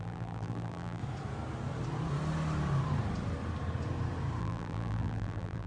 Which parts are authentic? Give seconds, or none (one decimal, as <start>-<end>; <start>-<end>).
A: 1.0-4.4